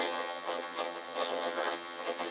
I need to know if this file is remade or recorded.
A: remade